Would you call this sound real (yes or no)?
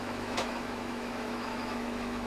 no